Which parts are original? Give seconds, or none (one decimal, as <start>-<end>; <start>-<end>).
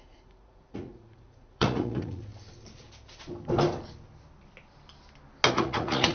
2.3-5.5